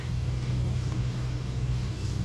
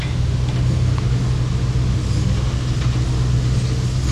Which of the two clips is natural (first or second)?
second